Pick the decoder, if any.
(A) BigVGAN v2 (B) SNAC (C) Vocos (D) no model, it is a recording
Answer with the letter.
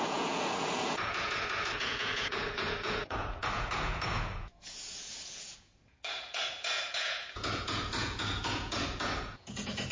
C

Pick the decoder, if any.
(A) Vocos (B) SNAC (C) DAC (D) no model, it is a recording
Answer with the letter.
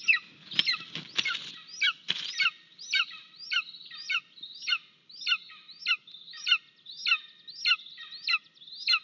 D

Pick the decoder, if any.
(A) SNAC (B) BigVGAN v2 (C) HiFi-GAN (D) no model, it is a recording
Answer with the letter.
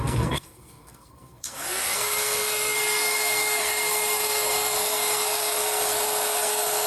A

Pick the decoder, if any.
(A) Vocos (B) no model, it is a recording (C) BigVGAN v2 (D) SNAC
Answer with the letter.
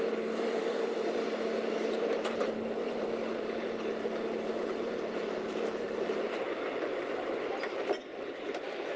C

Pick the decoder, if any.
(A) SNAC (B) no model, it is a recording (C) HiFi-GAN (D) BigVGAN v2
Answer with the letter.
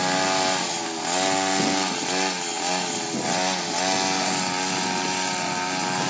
B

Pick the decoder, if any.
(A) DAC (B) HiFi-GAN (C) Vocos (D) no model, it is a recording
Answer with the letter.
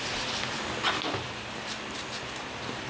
D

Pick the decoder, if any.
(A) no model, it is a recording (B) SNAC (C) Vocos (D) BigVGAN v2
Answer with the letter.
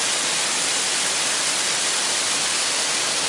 A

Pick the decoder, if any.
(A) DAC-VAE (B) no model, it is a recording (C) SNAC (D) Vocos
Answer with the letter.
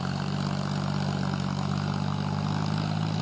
B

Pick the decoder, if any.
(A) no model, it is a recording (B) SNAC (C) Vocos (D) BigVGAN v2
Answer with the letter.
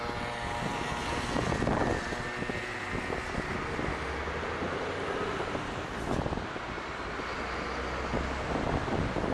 A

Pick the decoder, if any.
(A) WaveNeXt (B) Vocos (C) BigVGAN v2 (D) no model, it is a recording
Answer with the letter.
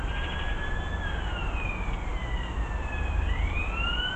D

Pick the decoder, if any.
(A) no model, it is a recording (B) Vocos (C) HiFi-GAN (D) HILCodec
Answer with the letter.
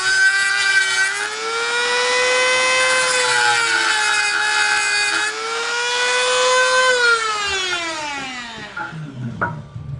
A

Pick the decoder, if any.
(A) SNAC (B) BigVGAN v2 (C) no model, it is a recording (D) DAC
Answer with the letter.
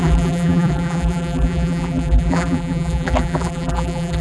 B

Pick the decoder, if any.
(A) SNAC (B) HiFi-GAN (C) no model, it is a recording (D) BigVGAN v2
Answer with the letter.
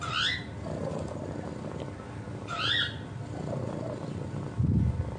C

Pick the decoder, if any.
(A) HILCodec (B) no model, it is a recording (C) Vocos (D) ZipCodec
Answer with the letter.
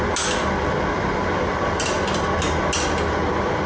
B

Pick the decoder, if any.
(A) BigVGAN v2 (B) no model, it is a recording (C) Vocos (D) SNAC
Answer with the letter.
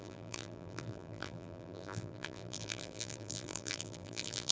A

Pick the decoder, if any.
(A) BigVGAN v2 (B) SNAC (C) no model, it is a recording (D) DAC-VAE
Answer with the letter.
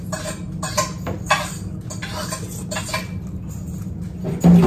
C